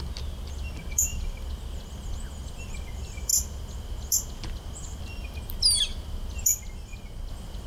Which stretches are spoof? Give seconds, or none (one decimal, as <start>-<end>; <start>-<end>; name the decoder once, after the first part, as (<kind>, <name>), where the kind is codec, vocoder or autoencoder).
none